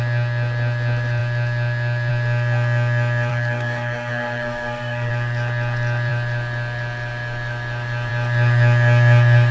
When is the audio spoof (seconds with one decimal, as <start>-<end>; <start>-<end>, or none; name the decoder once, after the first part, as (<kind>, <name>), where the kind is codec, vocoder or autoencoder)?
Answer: 3.3-5.1 (codec, SNAC)